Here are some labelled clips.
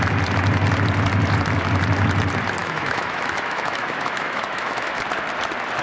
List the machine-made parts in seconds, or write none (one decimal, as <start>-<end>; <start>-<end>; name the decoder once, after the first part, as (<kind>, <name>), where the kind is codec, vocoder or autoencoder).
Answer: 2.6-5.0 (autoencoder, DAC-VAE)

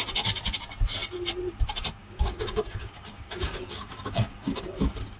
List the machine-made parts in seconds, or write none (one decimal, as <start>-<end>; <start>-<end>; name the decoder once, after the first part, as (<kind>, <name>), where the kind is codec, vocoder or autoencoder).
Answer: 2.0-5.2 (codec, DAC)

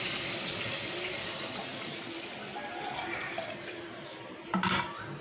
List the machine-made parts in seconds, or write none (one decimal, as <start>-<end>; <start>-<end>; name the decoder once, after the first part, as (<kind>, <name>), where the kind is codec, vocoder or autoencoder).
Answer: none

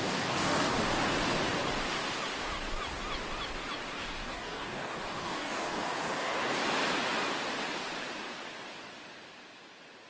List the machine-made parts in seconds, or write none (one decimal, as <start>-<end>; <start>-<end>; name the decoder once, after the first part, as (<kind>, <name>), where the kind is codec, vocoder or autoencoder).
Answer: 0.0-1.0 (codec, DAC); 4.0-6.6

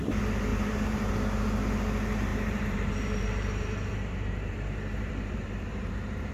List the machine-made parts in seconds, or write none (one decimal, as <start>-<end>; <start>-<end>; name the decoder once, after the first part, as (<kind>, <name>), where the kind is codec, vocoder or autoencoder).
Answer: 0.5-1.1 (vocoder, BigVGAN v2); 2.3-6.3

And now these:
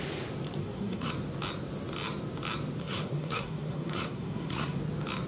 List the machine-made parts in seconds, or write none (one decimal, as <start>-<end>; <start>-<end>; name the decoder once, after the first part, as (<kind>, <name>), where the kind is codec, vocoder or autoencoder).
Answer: 0.6-1.1 (codec, SNAC); 2.8-4.8

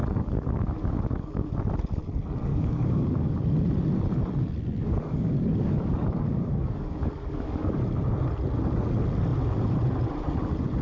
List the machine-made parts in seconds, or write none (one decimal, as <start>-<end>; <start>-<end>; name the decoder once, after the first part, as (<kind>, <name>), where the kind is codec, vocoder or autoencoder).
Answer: 0.0-1.5 (codec, DAC); 2.5-3.4; 4.8-7.8

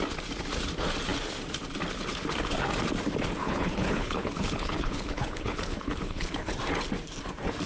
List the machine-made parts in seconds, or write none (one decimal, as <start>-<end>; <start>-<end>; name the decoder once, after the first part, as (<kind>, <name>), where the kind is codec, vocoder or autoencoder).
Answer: 3.4-6.5 (codec, HILCodec)